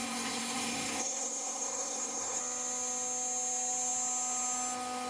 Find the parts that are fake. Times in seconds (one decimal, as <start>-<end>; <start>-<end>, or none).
0.0-2.4